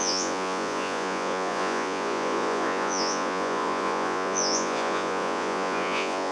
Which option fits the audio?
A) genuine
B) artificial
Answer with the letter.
B